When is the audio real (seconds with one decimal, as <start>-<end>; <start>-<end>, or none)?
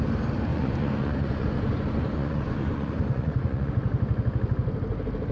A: 0.0-0.5; 3.7-5.3